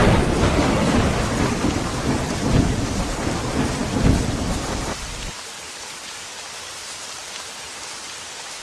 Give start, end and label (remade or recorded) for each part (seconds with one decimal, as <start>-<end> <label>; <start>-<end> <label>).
0.0-3.3 remade; 3.3-3.8 recorded; 3.8-7.2 remade; 7.2-8.6 recorded